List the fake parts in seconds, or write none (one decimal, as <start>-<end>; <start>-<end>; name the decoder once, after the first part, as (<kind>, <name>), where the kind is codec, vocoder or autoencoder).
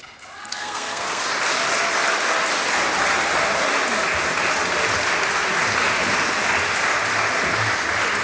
0.4-1.2 (codec, SNAC)